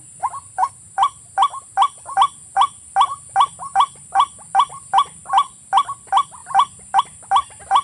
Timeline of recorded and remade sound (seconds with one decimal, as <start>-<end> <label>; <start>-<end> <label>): 0.0-7.8 recorded